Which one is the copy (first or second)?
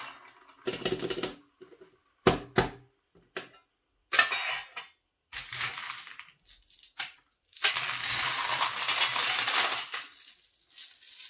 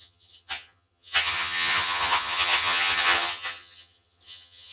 second